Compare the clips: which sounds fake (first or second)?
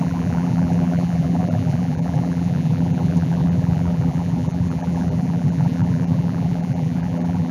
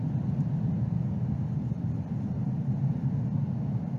first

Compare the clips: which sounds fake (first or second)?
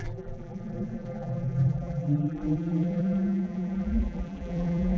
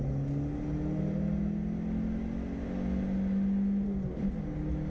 first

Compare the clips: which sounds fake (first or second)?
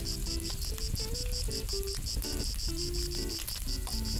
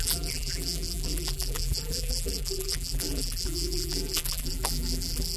second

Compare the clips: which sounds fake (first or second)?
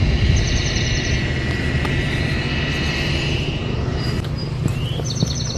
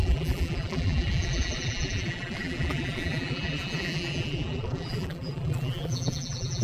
second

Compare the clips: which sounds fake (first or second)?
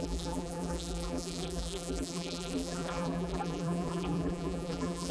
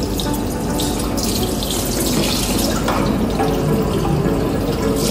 first